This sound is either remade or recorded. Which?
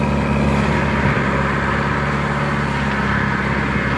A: recorded